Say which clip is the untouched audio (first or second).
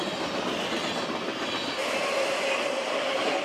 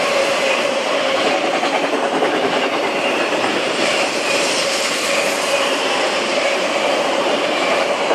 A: first